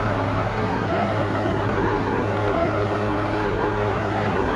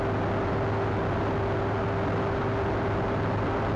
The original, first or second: second